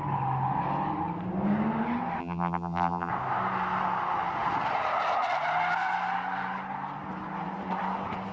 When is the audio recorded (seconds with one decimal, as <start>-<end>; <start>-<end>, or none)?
0.0-2.2; 3.1-8.3